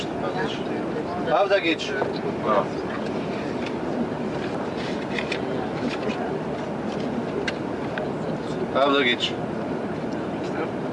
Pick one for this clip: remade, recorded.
recorded